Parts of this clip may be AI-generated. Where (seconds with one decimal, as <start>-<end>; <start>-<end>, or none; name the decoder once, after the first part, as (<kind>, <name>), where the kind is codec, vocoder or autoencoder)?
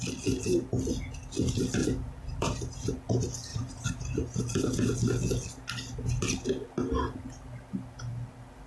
1.8-2.9 (vocoder, BigVGAN v2); 3.5-4.4